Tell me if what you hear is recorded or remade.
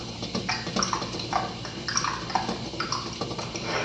recorded